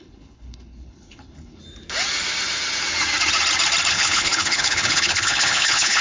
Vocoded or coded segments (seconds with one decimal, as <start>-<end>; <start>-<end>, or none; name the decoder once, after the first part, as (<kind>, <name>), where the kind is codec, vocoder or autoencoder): 0.0-1.6 (codec, HILCodec); 3.9-6.0